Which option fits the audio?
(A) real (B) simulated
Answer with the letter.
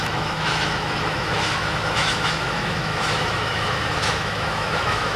B